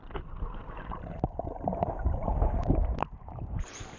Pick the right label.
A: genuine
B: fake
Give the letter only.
A